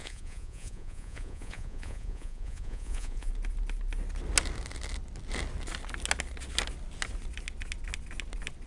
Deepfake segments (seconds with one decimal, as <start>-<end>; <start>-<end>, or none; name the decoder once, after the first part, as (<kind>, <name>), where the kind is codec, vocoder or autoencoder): 0.0-3.3 (vocoder, Vocos)